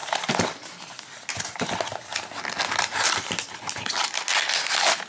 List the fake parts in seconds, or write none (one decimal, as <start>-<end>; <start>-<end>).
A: none